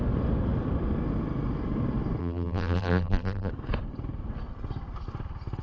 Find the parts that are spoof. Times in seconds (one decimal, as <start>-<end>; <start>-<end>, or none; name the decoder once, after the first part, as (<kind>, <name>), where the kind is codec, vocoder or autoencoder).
2.2-3.5 (vocoder, BigVGAN v2)